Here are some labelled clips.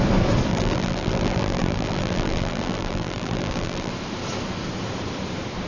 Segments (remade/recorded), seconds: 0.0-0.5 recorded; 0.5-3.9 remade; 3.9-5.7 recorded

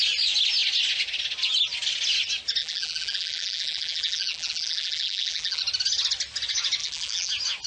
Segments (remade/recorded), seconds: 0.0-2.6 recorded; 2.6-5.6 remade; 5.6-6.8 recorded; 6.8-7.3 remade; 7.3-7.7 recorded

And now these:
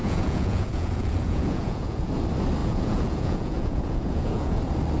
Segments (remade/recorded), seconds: 0.0-2.1 remade; 2.1-2.6 recorded; 2.6-4.6 remade; 4.6-5.0 recorded

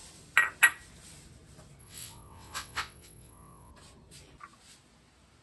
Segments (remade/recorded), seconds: 0.0-1.8 recorded; 1.8-3.7 remade; 3.7-5.4 recorded

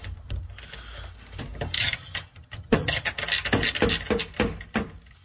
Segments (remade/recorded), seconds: 0.0-1.8 recorded; 1.8-3.1 remade; 3.1-5.2 recorded